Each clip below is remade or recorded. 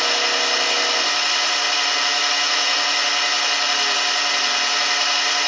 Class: recorded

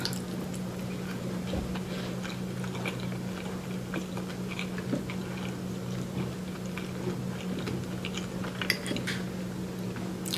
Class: recorded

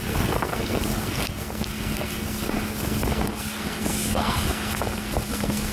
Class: remade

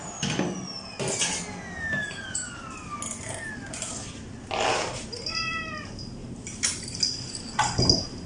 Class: recorded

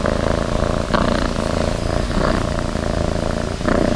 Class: recorded